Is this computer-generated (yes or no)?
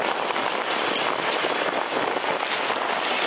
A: no